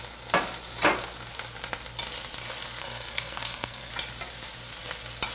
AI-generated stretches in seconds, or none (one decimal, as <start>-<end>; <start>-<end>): 2.8-3.9

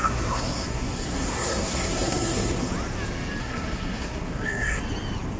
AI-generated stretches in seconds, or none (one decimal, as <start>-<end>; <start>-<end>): 0.0-2.7; 3.4-4.8

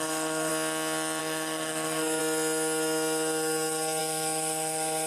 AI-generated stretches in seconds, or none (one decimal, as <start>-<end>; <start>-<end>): 0.0-0.5; 1.2-2.2; 4.0-5.1

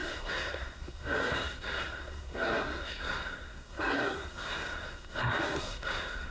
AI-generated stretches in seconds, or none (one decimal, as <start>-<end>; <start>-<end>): 0.0-6.3

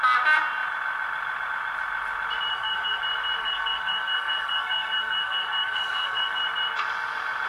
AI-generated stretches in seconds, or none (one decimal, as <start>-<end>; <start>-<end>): 2.5-3.0; 3.4-6.4